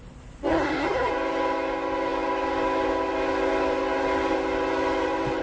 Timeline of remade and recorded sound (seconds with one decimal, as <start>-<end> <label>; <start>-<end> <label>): 0.0-0.5 recorded; 0.5-1.1 remade; 1.1-5.4 recorded

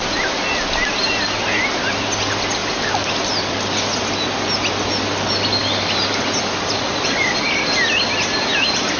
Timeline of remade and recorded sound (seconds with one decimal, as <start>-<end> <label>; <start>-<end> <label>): 0.0-5.6 recorded; 5.6-6.9 remade; 6.9-9.0 recorded

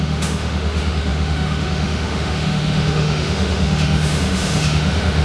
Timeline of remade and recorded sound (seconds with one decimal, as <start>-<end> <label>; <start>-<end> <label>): 0.0-5.2 remade

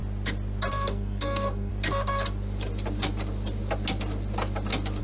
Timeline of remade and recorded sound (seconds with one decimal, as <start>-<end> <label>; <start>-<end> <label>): 0.0-0.7 recorded; 0.7-1.7 remade; 1.7-5.0 recorded

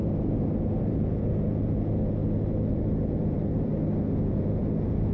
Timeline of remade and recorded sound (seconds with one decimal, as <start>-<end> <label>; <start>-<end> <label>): 0.0-2.2 remade; 2.2-2.7 recorded; 2.7-3.7 remade; 3.7-4.3 recorded; 4.3-5.1 remade

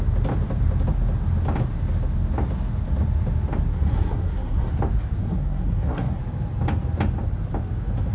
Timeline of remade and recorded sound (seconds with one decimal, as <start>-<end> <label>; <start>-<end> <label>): 0.0-3.7 recorded; 3.7-4.7 remade; 4.7-5.2 recorded; 5.2-6.2 remade; 6.2-8.1 recorded

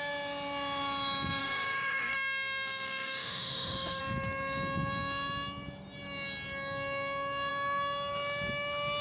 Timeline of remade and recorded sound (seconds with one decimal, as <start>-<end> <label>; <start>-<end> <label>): 0.0-1.4 recorded; 1.4-4.0 remade; 4.0-9.0 recorded

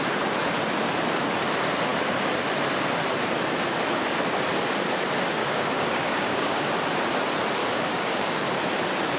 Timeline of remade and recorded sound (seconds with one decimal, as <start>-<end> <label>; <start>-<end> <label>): 0.0-5.4 recorded; 5.4-6.7 remade; 6.7-7.6 recorded; 7.6-8.4 remade; 8.4-9.2 recorded